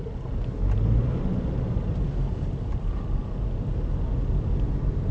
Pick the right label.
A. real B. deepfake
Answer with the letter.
A